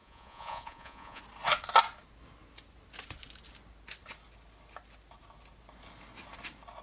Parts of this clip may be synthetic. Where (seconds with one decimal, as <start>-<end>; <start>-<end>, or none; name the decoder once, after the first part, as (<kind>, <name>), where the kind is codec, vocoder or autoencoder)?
0.0-1.2 (vocoder, Vocos)